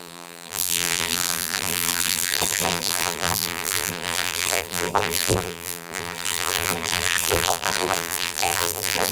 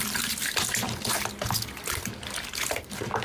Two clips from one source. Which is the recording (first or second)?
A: second